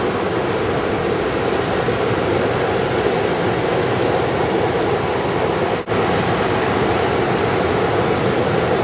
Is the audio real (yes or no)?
yes